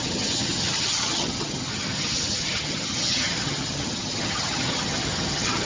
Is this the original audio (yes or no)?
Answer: no